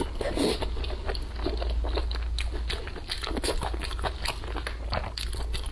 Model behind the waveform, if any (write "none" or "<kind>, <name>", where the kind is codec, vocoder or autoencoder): none